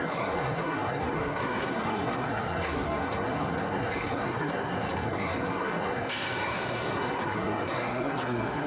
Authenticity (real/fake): fake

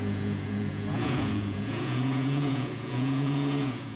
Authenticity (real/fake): fake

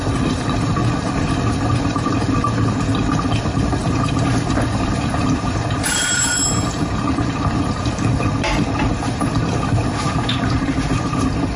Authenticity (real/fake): fake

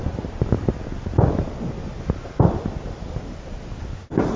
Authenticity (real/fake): real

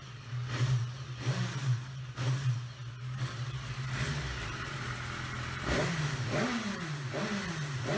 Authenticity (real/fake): real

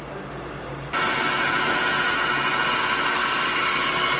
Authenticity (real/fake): real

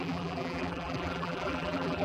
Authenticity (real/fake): fake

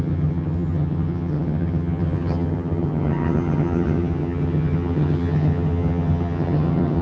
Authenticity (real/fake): fake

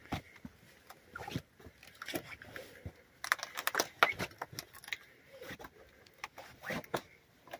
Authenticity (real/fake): real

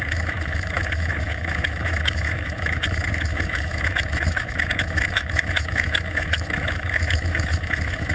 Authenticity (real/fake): fake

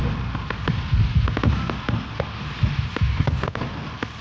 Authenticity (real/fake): real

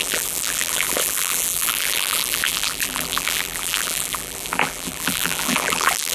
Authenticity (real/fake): fake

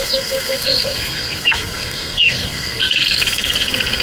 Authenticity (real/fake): fake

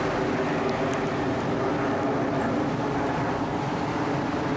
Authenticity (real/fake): real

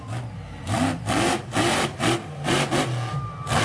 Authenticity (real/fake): real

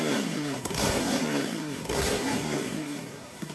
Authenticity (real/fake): fake